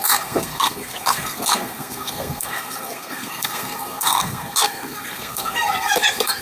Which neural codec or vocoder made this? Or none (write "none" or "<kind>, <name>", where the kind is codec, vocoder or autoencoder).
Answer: codec, SNAC